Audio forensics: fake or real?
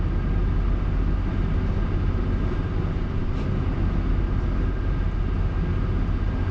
real